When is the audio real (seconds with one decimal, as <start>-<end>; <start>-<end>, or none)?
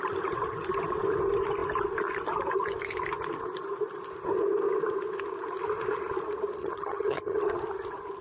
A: 0.0-6.6; 7.4-8.2